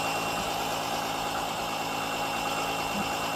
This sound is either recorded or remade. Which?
recorded